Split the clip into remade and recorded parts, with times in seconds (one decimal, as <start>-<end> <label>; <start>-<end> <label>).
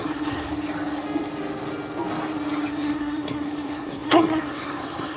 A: 0.0-0.5 remade; 0.5-2.7 recorded; 2.7-5.2 remade